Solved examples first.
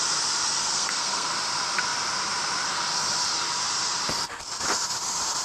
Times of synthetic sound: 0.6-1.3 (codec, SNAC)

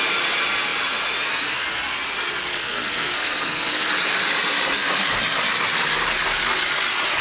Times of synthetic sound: 2.5-3.9 (codec, SNAC)